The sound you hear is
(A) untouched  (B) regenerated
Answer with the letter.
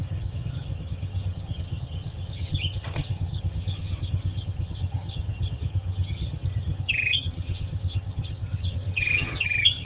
B